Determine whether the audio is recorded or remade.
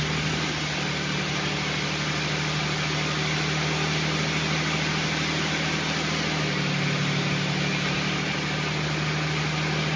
recorded